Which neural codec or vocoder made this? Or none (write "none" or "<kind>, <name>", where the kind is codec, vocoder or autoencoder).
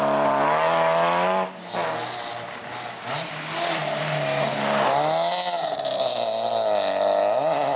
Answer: none